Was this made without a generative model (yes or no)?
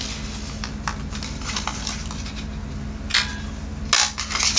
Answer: yes